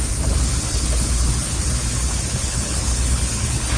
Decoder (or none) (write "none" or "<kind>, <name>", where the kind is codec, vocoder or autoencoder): codec, HILCodec